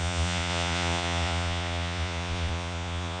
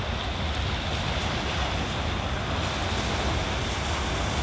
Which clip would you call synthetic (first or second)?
first